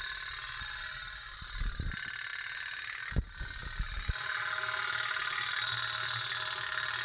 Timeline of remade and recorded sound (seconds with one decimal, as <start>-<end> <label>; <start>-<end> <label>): 0.0-7.0 recorded